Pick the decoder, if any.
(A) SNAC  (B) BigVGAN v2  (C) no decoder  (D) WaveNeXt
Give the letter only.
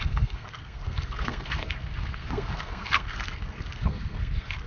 A